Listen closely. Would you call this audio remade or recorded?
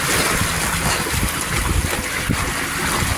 recorded